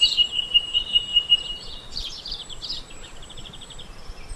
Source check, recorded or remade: remade